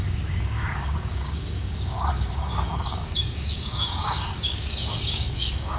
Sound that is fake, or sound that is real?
fake